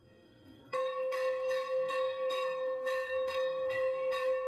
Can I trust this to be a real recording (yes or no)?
no